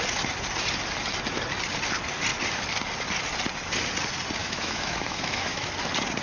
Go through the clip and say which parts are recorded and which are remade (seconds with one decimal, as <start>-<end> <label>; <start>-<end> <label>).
0.0-4.4 recorded; 4.4-5.7 remade; 5.7-6.2 recorded